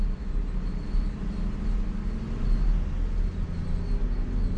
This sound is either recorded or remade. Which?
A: recorded